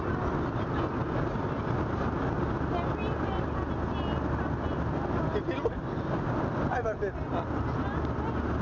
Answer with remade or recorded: recorded